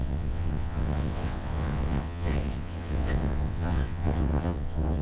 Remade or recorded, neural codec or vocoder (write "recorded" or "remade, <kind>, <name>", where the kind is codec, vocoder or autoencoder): remade, vocoder, WaveNeXt